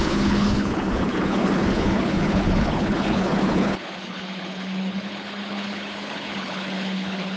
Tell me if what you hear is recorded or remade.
remade